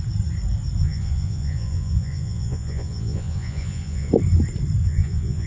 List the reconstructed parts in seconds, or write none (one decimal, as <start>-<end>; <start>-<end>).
0.8-4.1; 4.8-5.5